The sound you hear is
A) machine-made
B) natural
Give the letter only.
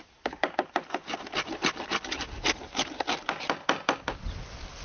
B